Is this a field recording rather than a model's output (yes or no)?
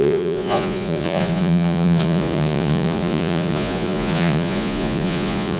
no